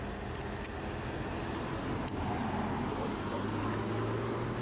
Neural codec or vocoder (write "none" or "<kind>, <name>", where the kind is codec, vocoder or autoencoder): none